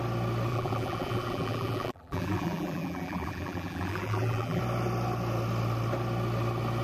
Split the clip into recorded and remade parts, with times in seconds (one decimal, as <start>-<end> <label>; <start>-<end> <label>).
0.0-0.5 recorded; 0.5-4.6 remade; 4.6-6.8 recorded